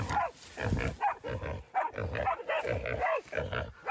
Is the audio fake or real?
real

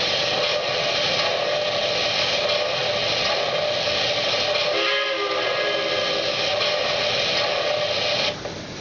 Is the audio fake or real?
real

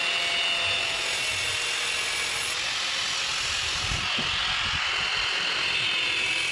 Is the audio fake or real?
real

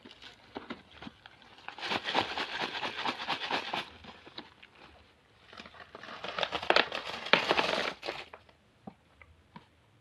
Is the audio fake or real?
real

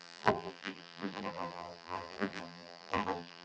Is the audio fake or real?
fake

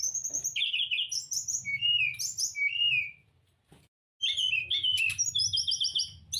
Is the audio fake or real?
real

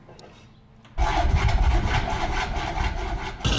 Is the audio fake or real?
real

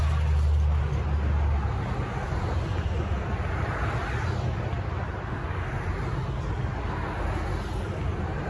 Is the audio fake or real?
real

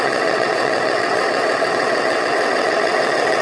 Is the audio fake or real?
fake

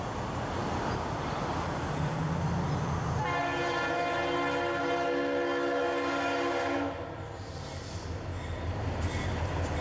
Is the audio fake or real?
real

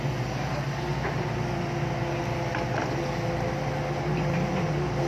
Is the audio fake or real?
real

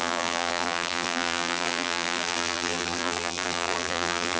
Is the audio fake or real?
fake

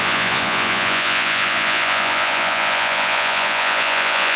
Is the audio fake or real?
fake